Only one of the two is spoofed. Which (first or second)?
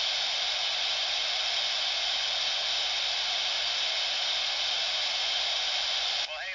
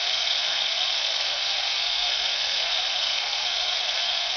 second